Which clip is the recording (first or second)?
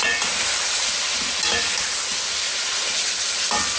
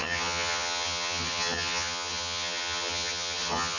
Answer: first